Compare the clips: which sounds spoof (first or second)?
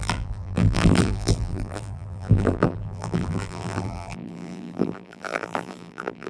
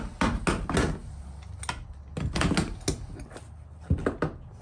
first